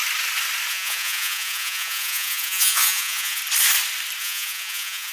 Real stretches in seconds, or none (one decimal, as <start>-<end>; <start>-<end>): 0.0-0.7; 3.4-4.2